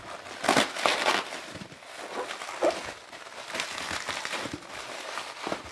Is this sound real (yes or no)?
yes